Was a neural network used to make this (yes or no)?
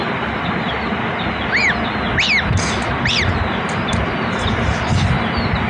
no